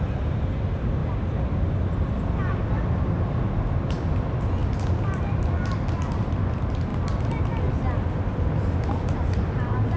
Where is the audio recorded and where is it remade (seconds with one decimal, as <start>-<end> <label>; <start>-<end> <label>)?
0.0-10.0 recorded